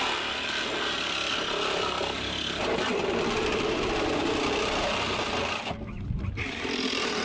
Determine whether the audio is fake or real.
fake